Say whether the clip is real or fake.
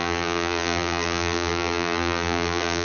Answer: fake